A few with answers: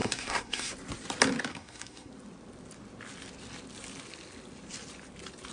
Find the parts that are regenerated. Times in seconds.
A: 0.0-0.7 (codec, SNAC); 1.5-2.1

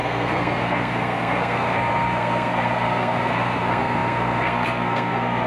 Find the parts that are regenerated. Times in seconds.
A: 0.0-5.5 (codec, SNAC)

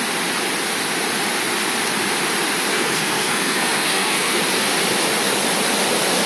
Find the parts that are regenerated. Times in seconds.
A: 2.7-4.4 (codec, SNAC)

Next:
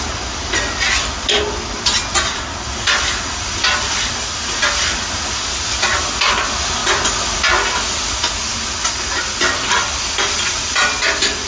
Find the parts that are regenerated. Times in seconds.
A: none

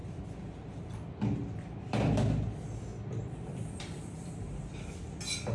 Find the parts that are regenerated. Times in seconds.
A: none

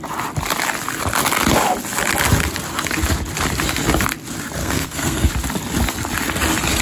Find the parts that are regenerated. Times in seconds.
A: 4.6-5.3 (codec, SNAC)